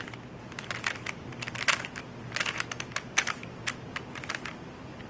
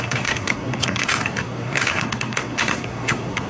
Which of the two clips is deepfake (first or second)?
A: second